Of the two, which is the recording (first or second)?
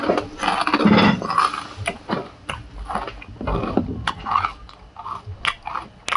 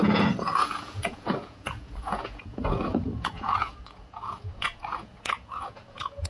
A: first